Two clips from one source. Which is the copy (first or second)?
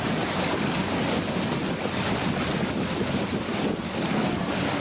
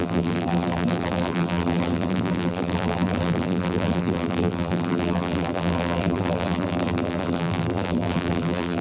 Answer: second